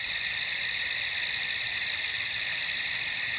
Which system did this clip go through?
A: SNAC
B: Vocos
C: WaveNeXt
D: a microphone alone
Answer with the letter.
D